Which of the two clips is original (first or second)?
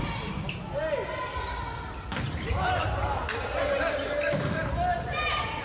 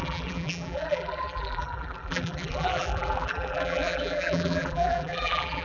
first